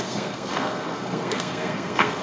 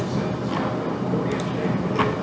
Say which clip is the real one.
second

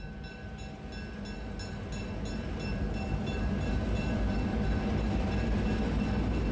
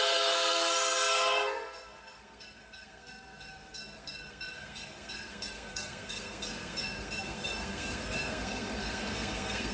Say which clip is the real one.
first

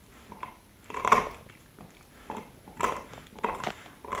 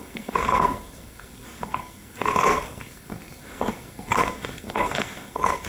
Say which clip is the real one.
first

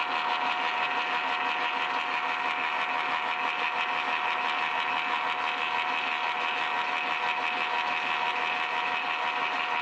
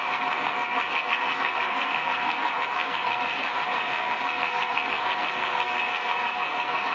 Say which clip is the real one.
first